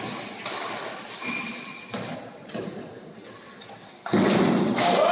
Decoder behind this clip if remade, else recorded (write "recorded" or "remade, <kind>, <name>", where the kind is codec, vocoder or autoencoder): recorded